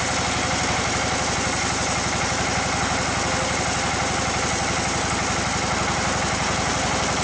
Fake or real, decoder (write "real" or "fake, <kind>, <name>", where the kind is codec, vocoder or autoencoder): real